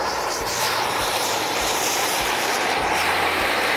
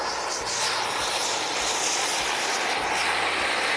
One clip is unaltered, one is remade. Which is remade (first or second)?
first